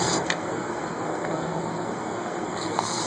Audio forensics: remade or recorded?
remade